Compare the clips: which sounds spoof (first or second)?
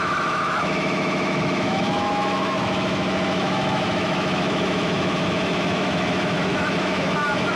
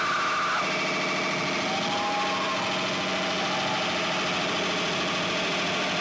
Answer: first